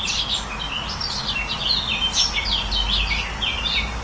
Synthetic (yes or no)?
no